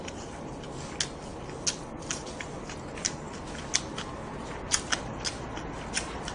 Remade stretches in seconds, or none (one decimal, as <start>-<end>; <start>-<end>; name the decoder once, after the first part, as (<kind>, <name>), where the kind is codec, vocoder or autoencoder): none